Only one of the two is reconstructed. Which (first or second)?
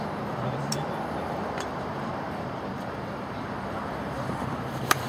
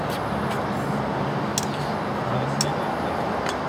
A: first